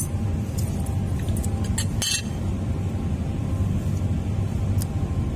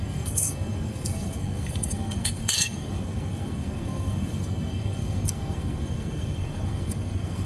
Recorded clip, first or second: first